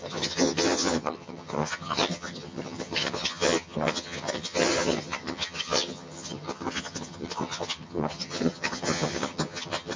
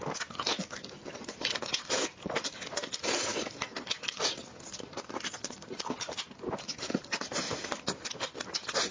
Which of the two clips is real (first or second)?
second